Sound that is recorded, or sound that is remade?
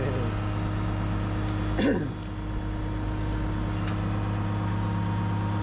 recorded